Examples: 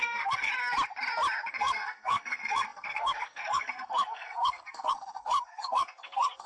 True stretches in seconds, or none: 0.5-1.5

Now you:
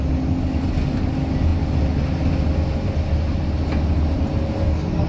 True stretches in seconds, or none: 0.0-5.1